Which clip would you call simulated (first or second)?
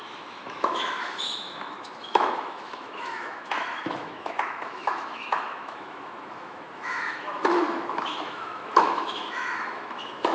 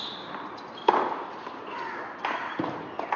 first